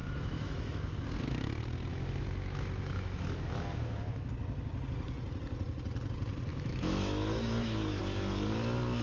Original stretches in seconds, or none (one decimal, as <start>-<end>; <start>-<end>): 1.0-1.9; 4.3-6.5; 8.0-9.0